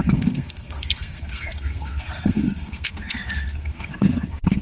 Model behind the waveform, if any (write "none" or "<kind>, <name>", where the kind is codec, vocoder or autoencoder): codec, SNAC